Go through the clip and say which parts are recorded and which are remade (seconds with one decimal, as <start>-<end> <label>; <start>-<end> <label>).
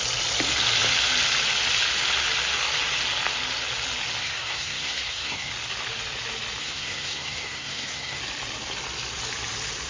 0.0-4.2 recorded; 4.2-5.5 remade; 5.5-6.6 recorded; 6.6-8.2 remade; 8.2-9.9 recorded